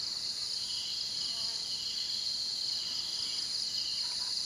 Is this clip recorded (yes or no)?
yes